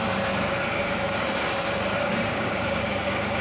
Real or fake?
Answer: fake